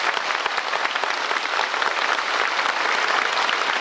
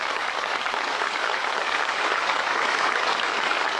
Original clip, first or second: first